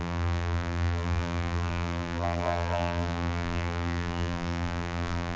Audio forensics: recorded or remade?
remade